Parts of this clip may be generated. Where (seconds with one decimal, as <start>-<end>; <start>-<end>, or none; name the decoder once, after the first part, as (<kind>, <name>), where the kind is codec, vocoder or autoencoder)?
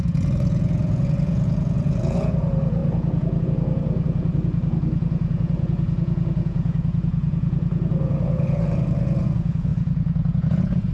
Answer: 0.0-10.9 (vocoder, Vocos)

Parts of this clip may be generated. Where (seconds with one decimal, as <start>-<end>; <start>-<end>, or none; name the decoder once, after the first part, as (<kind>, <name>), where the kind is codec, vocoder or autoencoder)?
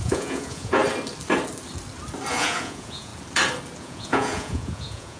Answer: 0.0-0.8 (vocoder, Vocos); 2.3-3.1; 3.8-5.2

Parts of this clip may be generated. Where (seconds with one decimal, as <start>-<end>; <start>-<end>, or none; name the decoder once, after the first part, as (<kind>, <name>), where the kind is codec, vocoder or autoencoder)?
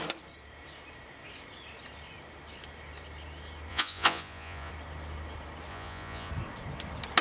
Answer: 3.7-4.7 (vocoder, Vocos); 5.7-6.3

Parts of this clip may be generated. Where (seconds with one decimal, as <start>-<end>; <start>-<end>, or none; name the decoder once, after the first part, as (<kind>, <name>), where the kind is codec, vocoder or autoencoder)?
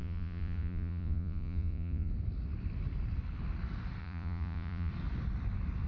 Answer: 0.0-2.1 (vocoder, Vocos); 4.0-4.9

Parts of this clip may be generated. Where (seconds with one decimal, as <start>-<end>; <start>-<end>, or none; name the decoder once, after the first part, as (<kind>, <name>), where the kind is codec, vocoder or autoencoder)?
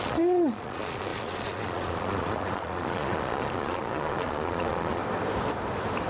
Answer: 0.0-5.0 (vocoder, Vocos)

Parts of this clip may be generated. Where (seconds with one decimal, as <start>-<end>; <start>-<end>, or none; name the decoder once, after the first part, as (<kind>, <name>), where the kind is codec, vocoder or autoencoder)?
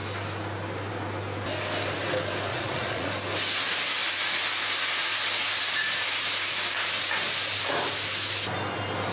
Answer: 2.5-3.1 (vocoder, Vocos)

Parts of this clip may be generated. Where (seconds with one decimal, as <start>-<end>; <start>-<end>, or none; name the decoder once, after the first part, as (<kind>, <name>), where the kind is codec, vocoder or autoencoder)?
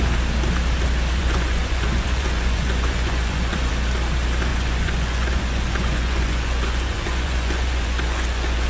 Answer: 1.2-3.7 (vocoder, Vocos); 4.5-8.7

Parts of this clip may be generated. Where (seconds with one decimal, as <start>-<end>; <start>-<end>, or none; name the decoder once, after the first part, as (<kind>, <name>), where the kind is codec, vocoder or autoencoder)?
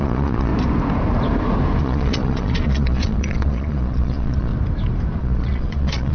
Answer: 0.0-0.5 (vocoder, Vocos); 1.8-4.5; 5.2-6.1